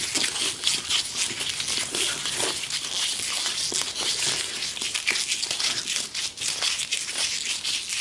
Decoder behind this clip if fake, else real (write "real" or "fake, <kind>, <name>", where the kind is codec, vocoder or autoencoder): real